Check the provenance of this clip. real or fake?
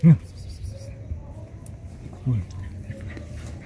real